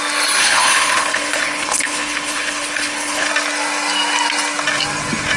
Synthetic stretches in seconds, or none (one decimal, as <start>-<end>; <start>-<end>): 0.4-3.3